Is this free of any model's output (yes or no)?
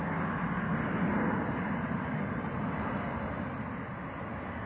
yes